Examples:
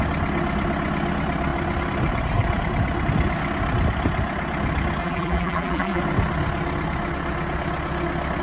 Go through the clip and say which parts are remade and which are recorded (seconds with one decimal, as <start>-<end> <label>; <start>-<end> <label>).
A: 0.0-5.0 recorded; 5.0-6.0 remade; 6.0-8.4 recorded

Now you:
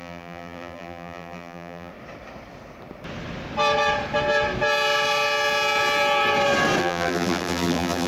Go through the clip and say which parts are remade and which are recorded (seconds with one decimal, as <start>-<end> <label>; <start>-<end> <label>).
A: 0.0-1.9 remade; 1.9-6.8 recorded; 6.8-8.1 remade

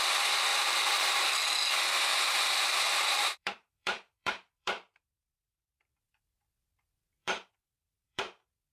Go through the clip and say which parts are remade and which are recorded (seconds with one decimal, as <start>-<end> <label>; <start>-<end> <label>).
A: 0.0-0.5 recorded; 0.5-1.3 remade; 1.3-2.1 recorded; 2.1-5.6 remade; 5.6-7.2 recorded; 7.2-8.2 remade; 8.2-8.7 recorded